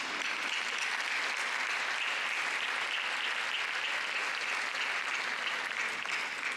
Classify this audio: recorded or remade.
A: recorded